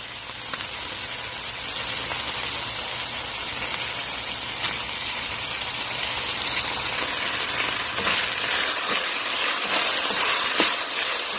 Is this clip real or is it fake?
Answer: real